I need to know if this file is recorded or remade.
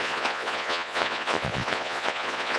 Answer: remade